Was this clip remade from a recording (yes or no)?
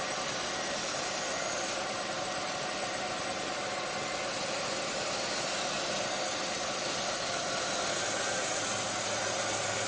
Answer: no